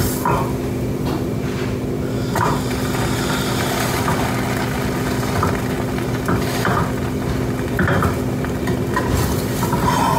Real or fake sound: real